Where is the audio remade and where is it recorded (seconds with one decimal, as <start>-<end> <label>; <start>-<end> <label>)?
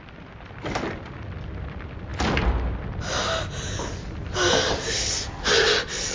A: 0.0-6.1 recorded